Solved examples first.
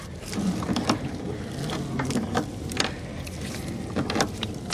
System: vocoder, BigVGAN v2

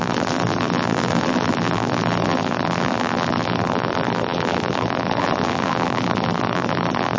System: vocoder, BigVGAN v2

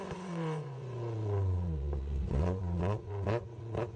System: vocoder, Vocos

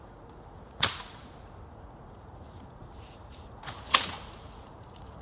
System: vocoder, Vocos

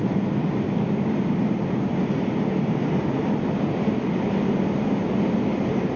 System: none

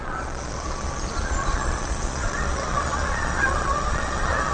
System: vocoder, Vocos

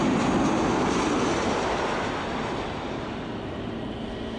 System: none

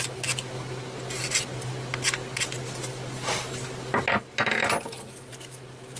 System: none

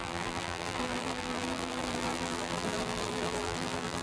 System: vocoder, BigVGAN v2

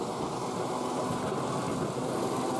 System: none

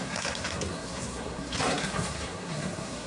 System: codec, SNAC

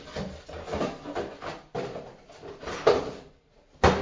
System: none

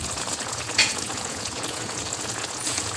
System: vocoder, Vocos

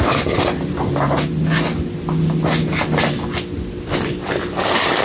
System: none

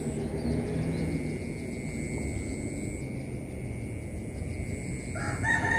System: none